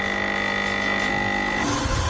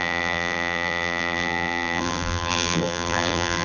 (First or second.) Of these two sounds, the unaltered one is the first